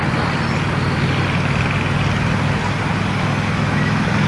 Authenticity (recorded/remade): recorded